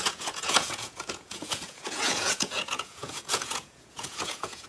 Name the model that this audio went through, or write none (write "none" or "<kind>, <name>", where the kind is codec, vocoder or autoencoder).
vocoder, Vocos